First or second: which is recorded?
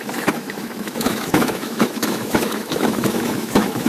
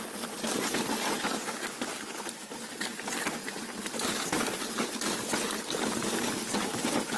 second